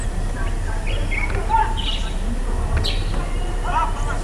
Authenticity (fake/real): real